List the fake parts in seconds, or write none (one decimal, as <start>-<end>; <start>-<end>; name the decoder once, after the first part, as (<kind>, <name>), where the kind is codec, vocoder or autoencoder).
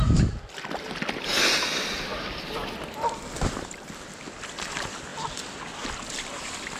none